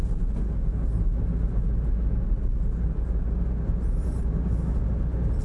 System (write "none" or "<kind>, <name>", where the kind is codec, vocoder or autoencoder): none